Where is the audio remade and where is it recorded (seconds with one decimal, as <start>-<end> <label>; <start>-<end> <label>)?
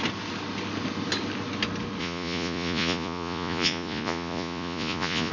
0.0-2.0 recorded; 2.0-5.3 remade